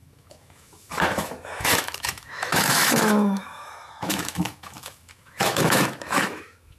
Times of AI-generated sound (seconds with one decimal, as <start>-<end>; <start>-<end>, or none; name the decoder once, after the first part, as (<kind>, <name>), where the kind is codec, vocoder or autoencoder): 0.0-6.8 (autoencoder, DAC-VAE)